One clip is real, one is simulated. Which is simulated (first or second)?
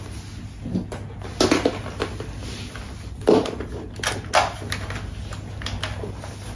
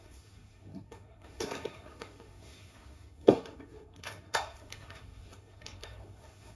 second